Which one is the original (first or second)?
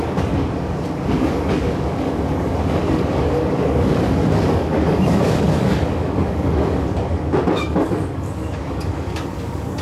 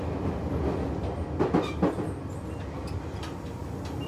second